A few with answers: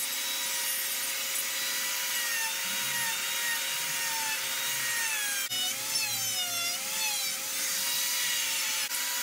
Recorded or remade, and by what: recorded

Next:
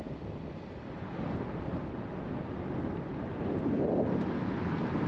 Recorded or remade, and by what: recorded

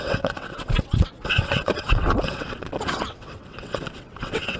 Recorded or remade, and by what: remade, vocoder, WaveNeXt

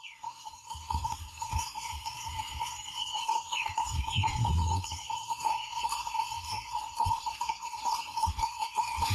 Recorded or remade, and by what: remade, codec, SNAC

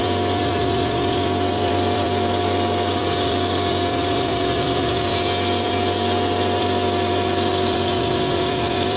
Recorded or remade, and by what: remade, vocoder, BigVGAN v2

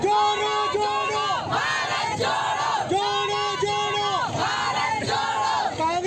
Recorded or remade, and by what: recorded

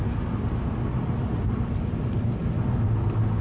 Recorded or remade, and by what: recorded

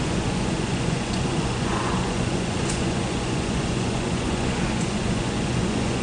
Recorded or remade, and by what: remade, vocoder, Vocos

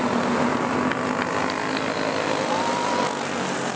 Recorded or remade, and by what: recorded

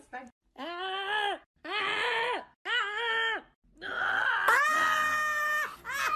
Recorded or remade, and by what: recorded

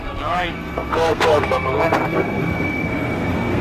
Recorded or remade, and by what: remade, codec, SNAC